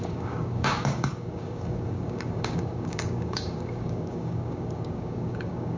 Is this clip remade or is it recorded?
remade